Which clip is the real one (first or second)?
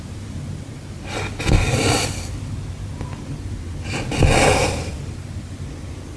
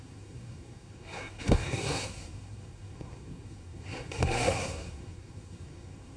first